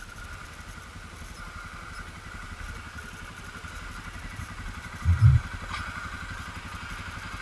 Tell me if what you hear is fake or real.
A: real